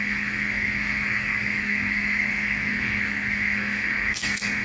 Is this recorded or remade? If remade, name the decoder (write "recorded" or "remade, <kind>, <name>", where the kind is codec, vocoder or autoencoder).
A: remade, codec, SNAC